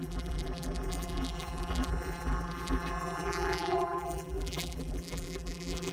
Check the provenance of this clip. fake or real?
fake